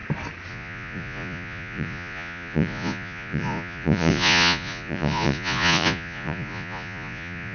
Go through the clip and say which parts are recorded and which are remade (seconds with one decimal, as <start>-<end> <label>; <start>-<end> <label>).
0.0-0.5 recorded; 0.5-7.5 remade